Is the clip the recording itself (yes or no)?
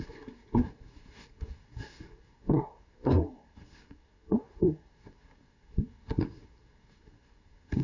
no